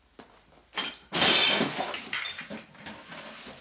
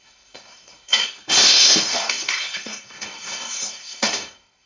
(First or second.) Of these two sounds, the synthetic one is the second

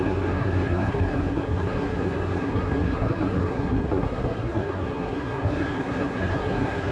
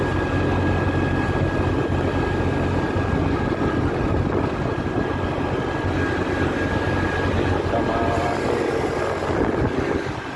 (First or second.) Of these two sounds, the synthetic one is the first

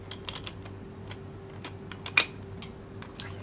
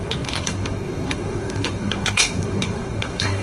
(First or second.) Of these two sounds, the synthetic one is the second